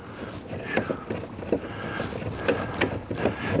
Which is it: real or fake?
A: real